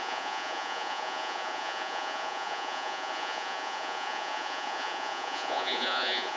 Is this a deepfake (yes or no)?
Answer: yes